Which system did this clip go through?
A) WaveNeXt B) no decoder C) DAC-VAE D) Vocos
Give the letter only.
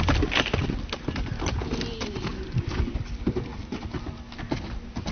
B